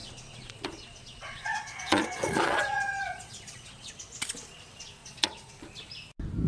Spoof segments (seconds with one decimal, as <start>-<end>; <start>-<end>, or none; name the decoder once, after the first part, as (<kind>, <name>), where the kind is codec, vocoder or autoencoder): 0.0-3.9 (vocoder, Vocos); 5.0-5.5